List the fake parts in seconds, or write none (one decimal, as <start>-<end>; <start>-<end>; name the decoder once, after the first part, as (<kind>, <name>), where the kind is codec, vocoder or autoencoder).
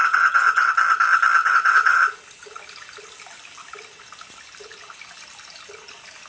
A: 0.0-0.7 (vocoder, WaveNeXt); 1.4-2.0